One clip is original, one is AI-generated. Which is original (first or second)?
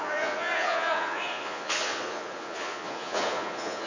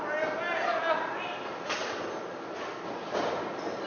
second